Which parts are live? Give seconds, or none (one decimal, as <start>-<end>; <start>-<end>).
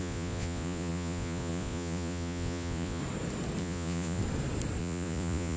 3.0-3.6; 4.2-4.8